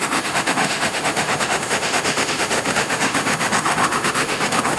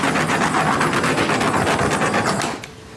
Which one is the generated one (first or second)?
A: first